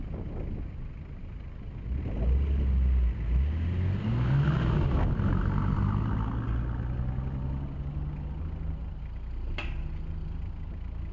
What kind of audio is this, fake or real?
real